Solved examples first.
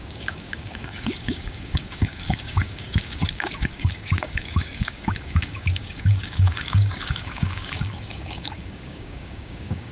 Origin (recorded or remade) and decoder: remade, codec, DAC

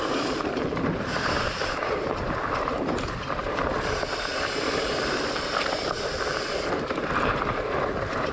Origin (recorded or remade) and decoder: remade, vocoder, BigVGAN v2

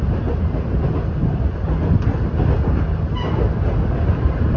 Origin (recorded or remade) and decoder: recorded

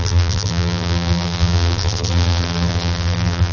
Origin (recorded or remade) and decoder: remade, vocoder, BigVGAN v2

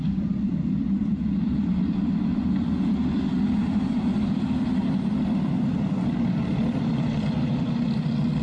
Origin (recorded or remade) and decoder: remade, vocoder, BigVGAN v2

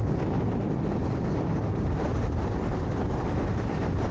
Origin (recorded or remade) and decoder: recorded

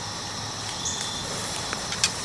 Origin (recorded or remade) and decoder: recorded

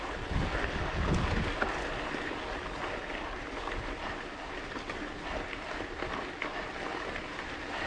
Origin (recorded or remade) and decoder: recorded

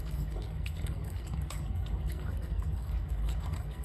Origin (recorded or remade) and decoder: remade, codec, SNAC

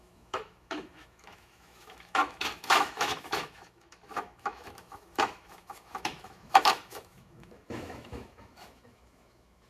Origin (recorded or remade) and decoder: remade, autoencoder, DAC-VAE